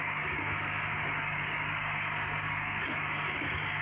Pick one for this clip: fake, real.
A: fake